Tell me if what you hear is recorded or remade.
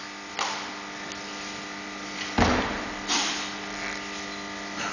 recorded